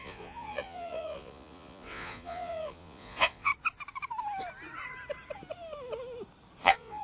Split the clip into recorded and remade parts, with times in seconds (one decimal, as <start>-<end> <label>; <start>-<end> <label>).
0.0-3.5 remade; 3.5-6.6 recorded; 6.6-7.0 remade